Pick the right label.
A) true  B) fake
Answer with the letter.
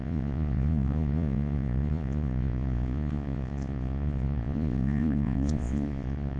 B